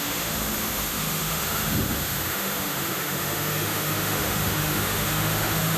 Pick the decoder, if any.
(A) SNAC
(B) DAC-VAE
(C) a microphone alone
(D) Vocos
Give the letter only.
B